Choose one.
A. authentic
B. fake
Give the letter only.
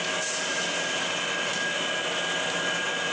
A